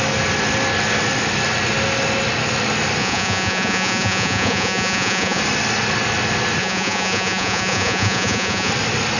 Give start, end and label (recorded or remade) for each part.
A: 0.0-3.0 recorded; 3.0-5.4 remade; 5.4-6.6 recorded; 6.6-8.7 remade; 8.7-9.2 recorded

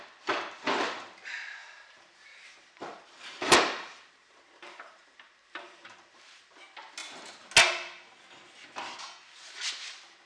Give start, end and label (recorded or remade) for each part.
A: 0.0-1.6 recorded; 1.6-6.4 remade; 6.4-10.3 recorded

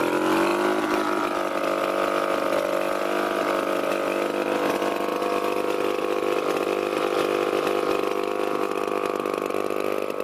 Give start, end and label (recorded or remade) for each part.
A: 0.0-10.2 recorded